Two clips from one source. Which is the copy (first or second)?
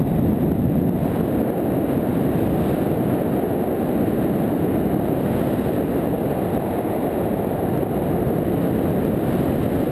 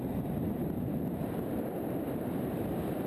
second